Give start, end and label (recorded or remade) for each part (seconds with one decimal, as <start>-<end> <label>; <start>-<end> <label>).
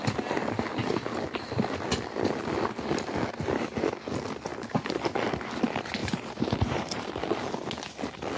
0.0-4.5 recorded; 4.5-5.0 remade; 5.0-6.0 recorded; 6.0-7.1 remade; 7.1-8.4 recorded